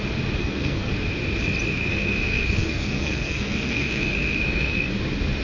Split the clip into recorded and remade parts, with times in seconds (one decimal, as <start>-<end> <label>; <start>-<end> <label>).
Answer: 0.0-0.4 recorded; 0.4-0.9 remade; 0.9-1.7 recorded; 1.7-4.9 remade; 4.9-5.4 recorded